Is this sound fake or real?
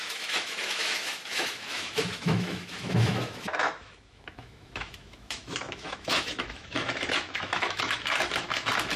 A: fake